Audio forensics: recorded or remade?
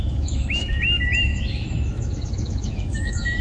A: remade